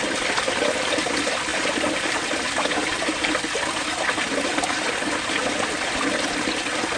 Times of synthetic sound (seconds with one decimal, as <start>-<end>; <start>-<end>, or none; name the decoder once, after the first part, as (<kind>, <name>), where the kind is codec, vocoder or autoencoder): none